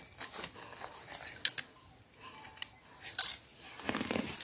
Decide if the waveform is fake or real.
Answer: real